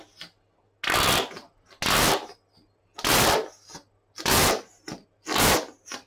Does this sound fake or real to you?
real